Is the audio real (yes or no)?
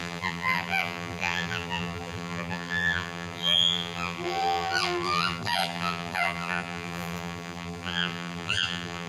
no